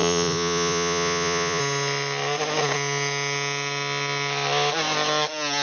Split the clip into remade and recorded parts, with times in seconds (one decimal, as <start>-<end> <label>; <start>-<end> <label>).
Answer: 0.0-1.6 remade; 1.6-5.6 recorded